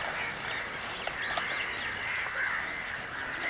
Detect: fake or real real